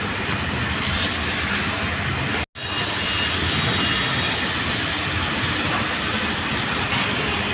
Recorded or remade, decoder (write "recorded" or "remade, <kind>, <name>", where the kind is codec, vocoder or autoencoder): recorded